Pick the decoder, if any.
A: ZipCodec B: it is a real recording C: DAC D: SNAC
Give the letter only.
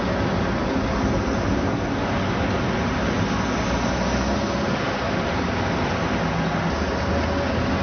B